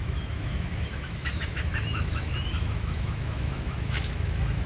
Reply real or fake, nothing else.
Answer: fake